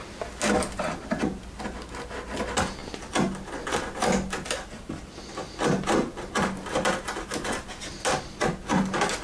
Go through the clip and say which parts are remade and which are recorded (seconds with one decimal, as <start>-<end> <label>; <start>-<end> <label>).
0.0-9.2 recorded